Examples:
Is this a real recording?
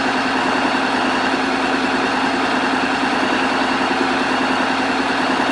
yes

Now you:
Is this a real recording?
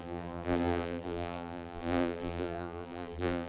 no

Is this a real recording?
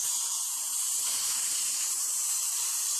no